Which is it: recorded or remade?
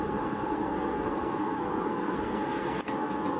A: remade